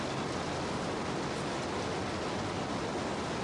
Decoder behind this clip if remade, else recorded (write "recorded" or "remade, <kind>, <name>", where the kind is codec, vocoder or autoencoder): recorded